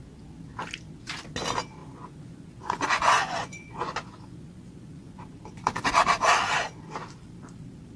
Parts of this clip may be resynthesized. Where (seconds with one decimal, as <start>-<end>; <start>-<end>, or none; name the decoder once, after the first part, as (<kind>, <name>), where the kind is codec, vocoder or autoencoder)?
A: 1.8-5.4 (vocoder, Vocos)